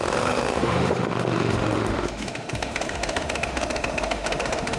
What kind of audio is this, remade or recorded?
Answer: remade